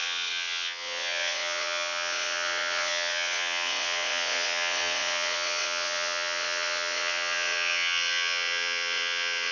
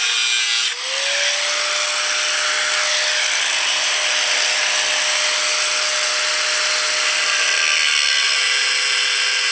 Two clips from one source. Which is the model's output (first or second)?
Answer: first